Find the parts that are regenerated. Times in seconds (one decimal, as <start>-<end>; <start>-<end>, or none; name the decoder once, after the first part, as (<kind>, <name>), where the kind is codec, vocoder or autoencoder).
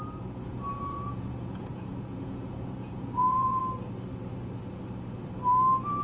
0.0-3.6 (vocoder, Vocos)